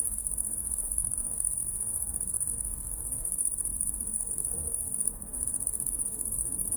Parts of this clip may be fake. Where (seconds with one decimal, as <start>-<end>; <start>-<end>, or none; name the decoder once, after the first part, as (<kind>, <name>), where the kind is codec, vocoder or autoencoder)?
0.0-6.8 (codec, DAC)